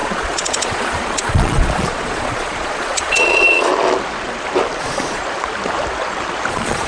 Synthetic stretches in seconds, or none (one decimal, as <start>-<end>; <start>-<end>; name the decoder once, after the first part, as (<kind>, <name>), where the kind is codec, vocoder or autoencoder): 0.0-3.7 (vocoder, Vocos); 4.8-5.2; 6.5-6.9